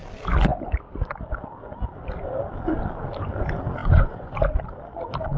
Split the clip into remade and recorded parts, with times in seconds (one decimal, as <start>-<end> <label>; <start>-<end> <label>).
0.0-3.8 recorded; 3.8-4.3 remade; 4.3-5.4 recorded